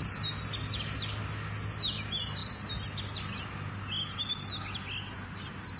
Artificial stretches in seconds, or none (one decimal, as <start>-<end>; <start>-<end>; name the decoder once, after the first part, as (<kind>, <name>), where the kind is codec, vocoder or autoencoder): none